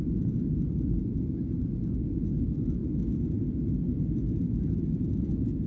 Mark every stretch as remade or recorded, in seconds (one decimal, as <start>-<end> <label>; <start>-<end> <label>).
0.0-5.7 recorded